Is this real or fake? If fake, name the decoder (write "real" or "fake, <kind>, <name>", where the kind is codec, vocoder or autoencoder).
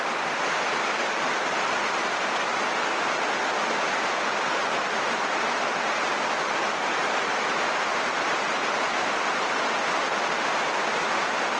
fake, vocoder, BigVGAN v2